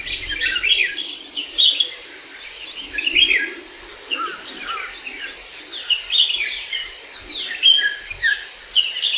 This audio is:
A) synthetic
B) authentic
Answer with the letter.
B